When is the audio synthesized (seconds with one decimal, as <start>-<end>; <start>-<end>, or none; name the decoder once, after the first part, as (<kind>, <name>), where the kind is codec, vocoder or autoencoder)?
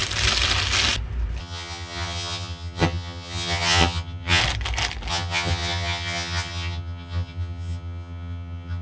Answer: 1.4-4.4 (vocoder, HiFi-GAN); 5.1-8.8